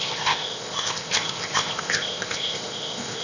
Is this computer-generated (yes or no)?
yes